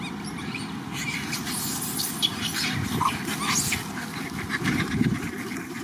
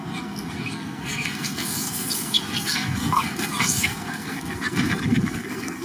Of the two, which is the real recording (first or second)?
first